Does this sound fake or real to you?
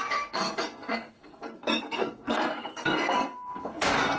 fake